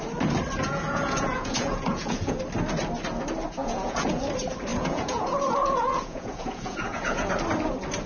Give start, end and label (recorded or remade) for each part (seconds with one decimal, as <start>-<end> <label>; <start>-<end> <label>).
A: 0.0-0.6 recorded; 0.6-2.4 remade; 2.4-3.6 recorded; 3.6-4.2 remade; 4.2-4.7 recorded; 4.7-7.3 remade; 7.3-8.1 recorded